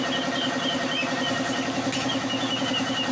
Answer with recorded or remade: recorded